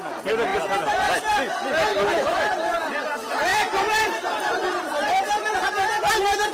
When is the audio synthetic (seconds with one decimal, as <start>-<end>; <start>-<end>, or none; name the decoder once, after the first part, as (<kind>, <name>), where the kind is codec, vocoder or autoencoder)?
1.9-2.8 (vocoder, BigVGAN v2); 3.5-5.7